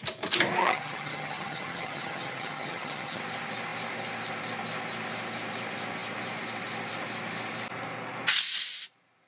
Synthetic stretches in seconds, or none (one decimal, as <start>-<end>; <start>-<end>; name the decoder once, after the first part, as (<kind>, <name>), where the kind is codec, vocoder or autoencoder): 0.6-3.2 (vocoder, HiFi-GAN)